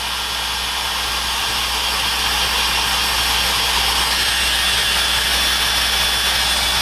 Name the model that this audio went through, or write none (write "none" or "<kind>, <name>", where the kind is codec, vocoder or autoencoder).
none